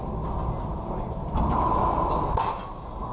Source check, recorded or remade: recorded